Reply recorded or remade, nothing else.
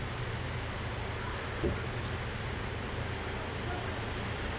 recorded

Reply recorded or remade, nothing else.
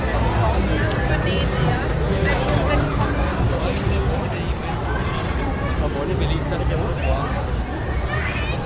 recorded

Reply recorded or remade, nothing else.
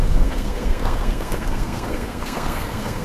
remade